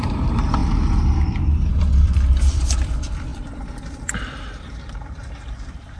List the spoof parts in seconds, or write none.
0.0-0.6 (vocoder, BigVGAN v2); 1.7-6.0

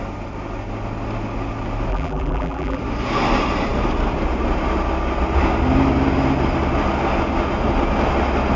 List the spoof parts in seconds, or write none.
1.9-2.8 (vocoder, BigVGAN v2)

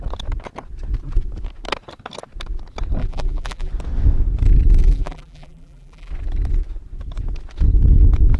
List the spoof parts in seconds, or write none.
3.0-3.7 (vocoder, BigVGAN v2); 4.8-6.1